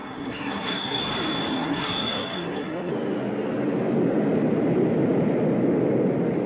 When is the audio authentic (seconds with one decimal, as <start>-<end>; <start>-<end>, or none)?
1.0-1.5; 2.9-6.5